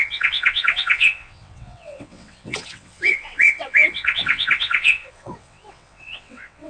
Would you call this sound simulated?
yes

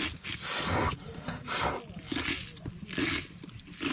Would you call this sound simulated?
no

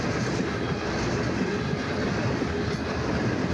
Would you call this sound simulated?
no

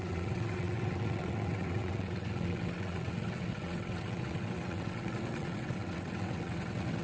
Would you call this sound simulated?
yes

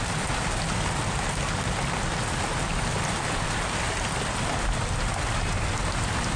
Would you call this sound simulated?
no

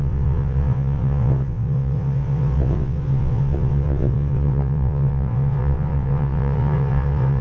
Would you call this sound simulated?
yes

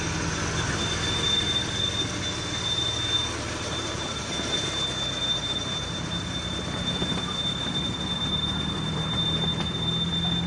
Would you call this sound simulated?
no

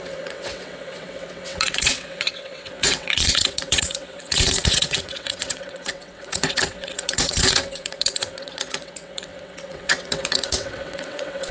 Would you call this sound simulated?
yes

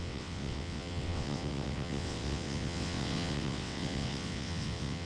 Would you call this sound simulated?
yes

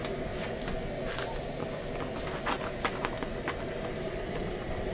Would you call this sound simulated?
no